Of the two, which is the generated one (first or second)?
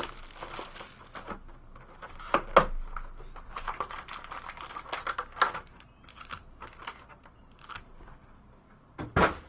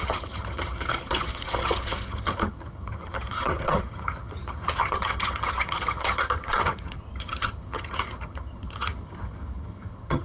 second